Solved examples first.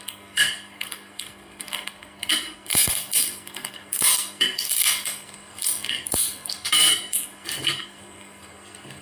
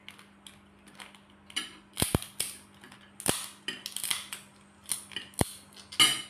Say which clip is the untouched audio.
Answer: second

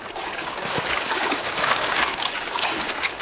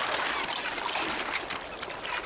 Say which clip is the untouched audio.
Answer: second